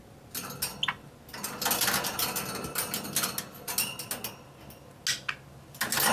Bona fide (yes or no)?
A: yes